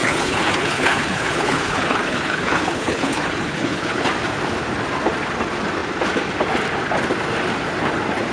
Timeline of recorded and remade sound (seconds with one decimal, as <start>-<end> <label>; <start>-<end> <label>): 0.0-4.1 remade; 4.1-8.3 recorded